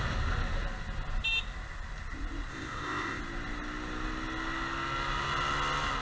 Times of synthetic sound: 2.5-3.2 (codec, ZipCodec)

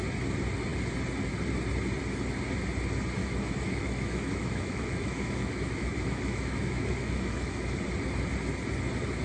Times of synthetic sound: 3.2-7.8 (autoencoder, DAC-VAE)

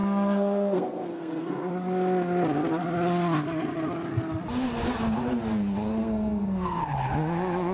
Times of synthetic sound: 0.0-1.7 (codec, SNAC); 6.0-6.8

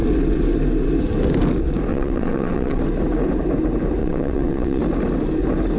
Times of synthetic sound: 1.9-2.8 (vocoder, WaveNeXt); 4.0-4.8